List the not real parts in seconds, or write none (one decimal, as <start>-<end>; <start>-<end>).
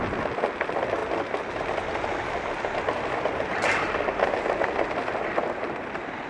none